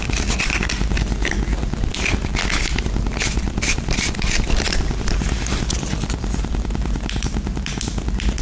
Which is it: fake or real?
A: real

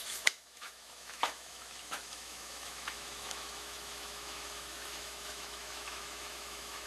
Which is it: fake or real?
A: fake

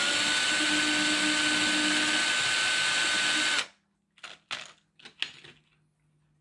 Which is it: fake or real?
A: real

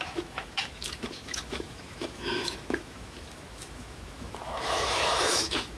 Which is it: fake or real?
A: fake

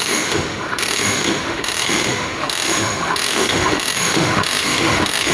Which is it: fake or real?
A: fake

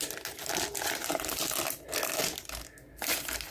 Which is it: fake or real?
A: real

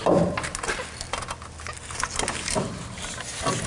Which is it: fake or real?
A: real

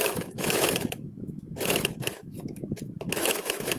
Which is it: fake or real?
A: fake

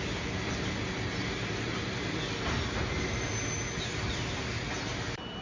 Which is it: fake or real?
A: real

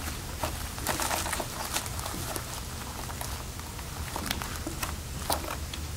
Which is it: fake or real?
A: real